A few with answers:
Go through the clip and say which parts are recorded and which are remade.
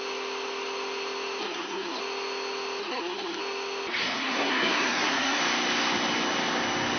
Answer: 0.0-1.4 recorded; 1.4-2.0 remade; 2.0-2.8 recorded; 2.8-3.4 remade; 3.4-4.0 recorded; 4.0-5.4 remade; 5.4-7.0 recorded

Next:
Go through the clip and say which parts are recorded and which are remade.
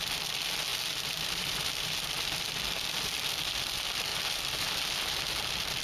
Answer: 0.0-5.8 recorded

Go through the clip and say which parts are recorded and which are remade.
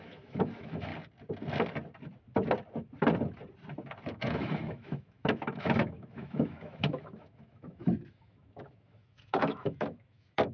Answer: 0.0-0.9 remade; 0.9-4.2 recorded; 4.2-10.5 remade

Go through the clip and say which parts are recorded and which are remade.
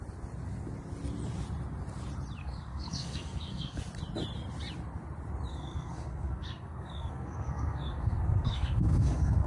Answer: 0.0-2.4 recorded; 2.4-3.8 remade; 3.8-5.5 recorded; 5.5-9.5 remade